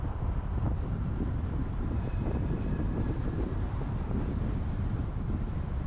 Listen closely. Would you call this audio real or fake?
fake